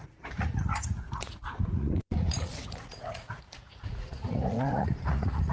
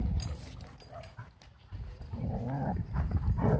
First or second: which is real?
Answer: second